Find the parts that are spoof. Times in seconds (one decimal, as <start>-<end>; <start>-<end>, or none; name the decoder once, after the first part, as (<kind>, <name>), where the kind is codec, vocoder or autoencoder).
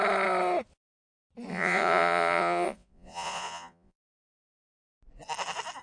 1.5-4.2 (vocoder, Vocos)